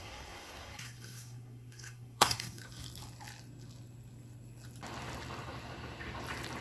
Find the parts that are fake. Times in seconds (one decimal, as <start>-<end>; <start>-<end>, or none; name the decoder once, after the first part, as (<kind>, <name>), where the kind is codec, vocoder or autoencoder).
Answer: 0.0-2.6 (codec, SNAC)